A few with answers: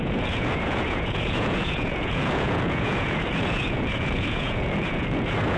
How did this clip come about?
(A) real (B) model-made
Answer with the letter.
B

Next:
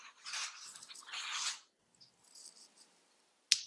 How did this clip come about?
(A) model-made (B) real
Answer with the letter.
B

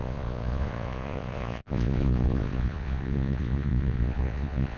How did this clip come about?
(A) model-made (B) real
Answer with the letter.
A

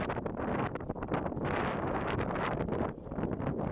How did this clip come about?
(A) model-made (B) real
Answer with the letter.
B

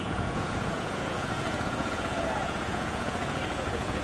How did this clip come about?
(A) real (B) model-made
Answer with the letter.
B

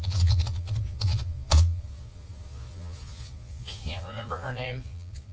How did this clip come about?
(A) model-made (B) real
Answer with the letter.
A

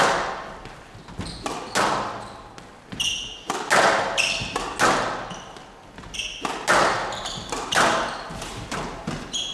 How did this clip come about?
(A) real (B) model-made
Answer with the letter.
A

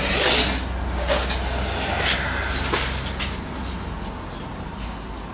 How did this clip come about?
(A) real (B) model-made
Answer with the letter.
A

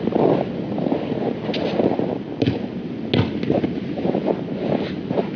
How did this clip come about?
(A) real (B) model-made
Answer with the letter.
A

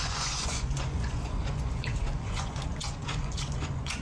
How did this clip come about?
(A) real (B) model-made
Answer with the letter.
B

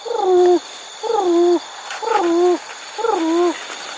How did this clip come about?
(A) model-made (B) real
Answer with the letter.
B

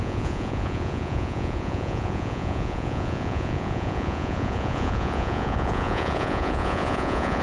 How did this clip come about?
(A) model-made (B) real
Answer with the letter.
A